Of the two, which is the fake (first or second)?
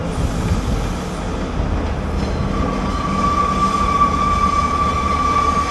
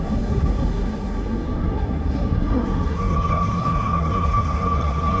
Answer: second